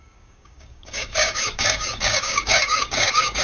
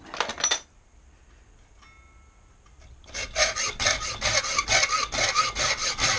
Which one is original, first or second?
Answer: second